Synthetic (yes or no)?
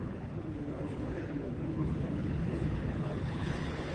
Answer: yes